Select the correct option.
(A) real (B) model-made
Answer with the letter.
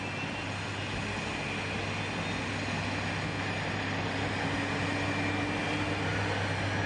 A